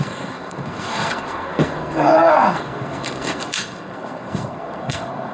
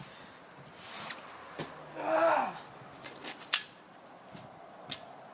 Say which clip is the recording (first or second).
second